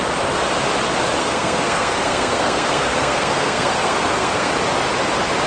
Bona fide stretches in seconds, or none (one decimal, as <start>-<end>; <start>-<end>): 0.0-1.2; 4.5-5.5